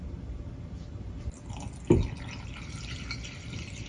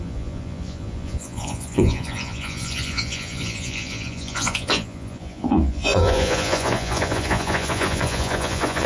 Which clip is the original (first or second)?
first